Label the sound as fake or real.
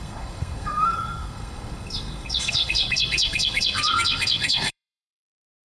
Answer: fake